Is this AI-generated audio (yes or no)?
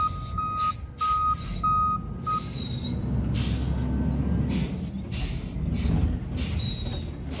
no